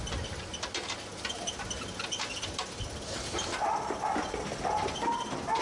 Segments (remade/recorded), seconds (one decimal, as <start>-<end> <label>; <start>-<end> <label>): 0.0-5.6 recorded